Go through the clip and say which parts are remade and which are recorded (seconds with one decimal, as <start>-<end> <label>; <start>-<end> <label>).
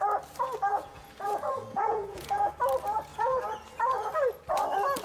0.0-0.7 recorded; 0.7-2.5 remade; 2.5-3.1 recorded; 3.1-4.1 remade; 4.1-5.0 recorded